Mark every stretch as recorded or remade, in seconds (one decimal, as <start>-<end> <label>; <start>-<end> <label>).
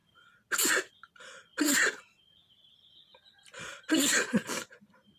0.0-5.2 recorded